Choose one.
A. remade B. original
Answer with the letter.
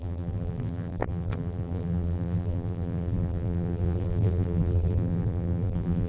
A